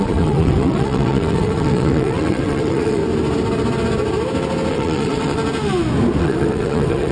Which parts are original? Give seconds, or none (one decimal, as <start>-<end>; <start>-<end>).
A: 3.0-4.7; 5.4-6.2